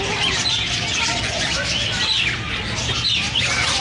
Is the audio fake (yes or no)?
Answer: no